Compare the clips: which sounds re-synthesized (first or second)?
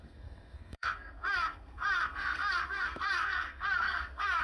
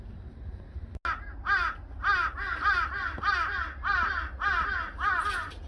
first